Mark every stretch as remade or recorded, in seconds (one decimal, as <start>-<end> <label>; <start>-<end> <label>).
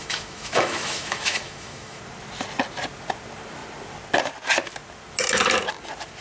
0.0-2.0 remade; 2.0-6.2 recorded